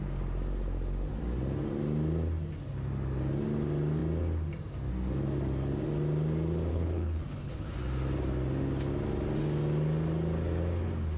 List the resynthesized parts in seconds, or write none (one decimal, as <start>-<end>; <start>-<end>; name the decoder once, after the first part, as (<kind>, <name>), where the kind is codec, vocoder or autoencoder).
6.7-7.7 (codec, HILCodec)